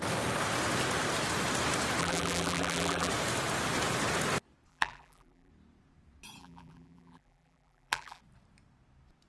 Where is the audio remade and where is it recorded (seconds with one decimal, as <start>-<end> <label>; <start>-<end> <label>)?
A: 0.0-2.0 recorded; 2.0-3.1 remade; 3.1-4.7 recorded; 4.7-5.5 remade; 5.5-6.4 recorded; 6.4-8.2 remade; 8.2-9.3 recorded